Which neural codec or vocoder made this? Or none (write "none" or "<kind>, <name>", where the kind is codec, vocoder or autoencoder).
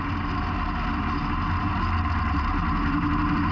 none